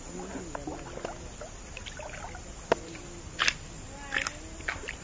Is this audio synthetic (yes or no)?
no